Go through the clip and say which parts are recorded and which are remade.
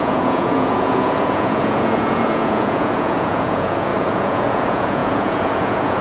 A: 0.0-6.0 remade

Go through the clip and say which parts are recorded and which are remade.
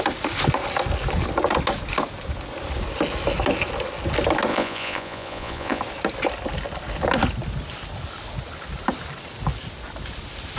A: 0.0-4.5 recorded; 4.5-5.8 remade; 5.8-10.6 recorded